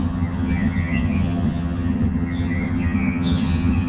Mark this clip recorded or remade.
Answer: remade